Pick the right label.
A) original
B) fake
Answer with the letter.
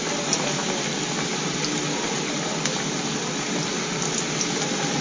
A